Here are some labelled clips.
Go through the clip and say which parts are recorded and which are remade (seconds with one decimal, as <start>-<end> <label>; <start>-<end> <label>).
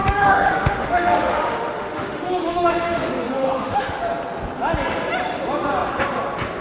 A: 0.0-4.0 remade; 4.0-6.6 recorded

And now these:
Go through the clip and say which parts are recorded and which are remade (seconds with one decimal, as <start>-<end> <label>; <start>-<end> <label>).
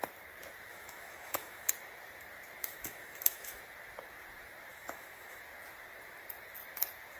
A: 0.0-0.7 recorded; 0.7-1.7 remade; 1.7-2.6 recorded; 2.6-3.6 remade; 3.6-4.7 recorded; 4.7-5.4 remade; 5.4-7.2 recorded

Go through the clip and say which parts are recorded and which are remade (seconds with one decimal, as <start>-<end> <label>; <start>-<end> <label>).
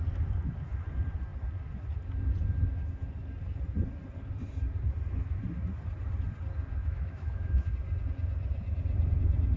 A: 0.0-6.8 recorded; 6.8-7.7 remade; 7.7-9.6 recorded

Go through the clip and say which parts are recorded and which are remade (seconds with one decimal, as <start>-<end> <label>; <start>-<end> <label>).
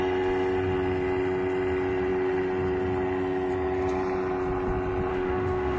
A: 0.0-5.1 recorded; 5.1-5.8 remade